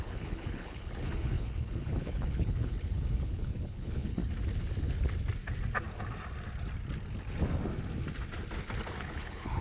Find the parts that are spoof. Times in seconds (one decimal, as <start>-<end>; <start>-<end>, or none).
0.0-4.2; 9.0-9.6